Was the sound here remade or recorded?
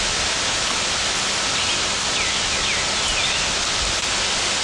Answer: recorded